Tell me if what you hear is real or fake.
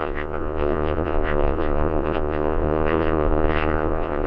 fake